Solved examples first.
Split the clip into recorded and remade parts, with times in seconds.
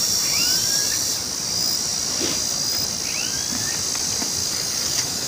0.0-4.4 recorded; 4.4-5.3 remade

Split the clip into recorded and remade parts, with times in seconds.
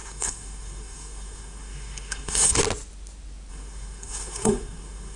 0.0-2.6 remade; 2.6-3.5 recorded; 3.5-5.2 remade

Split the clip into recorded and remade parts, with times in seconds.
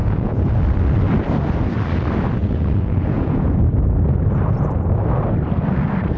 0.0-0.5 remade; 0.5-2.4 recorded; 2.4-4.1 remade; 4.1-6.2 recorded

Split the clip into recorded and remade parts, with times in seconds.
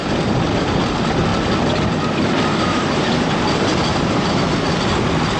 0.0-0.8 remade; 0.8-5.4 recorded